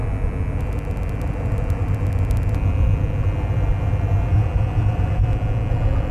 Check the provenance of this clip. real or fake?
real